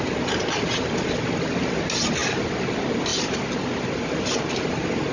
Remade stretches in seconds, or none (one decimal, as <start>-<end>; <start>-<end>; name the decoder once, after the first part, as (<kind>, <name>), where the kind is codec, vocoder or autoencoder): none